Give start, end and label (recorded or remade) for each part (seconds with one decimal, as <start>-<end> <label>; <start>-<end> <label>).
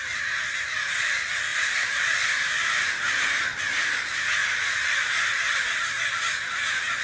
0.0-1.5 recorded; 1.5-3.6 remade; 3.6-4.4 recorded; 4.4-5.7 remade; 5.7-7.0 recorded